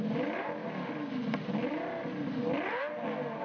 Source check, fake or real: real